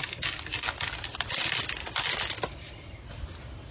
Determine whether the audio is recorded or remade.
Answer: recorded